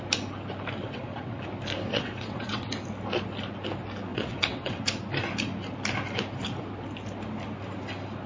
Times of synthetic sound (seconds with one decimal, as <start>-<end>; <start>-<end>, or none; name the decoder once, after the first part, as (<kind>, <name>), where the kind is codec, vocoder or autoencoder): 0.8-1.4 (vocoder, WaveNeXt); 1.9-2.7; 4.1-4.8